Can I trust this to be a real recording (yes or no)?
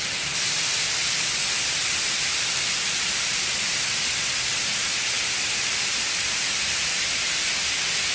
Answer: yes